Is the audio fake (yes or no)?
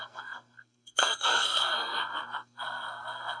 yes